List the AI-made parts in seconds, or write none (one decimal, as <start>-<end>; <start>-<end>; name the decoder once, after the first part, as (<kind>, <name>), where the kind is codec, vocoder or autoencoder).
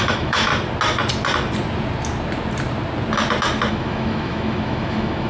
0.0-0.5 (autoencoder, DAC-VAE); 3.7-5.3